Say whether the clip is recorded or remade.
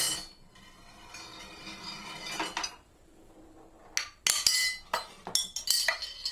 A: recorded